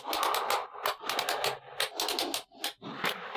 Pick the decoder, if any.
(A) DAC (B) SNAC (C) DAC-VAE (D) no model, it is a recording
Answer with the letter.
D